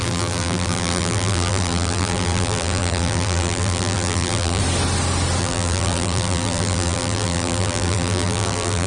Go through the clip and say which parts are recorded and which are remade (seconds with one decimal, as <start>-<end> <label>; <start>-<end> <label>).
0.0-4.6 remade; 4.6-5.4 recorded; 5.4-8.9 remade